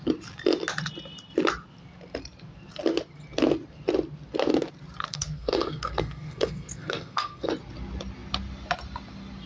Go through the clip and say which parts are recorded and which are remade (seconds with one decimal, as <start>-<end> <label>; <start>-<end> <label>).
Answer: 0.0-5.1 recorded; 5.1-7.5 remade; 7.5-9.5 recorded